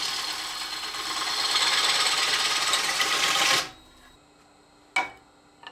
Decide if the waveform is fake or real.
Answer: real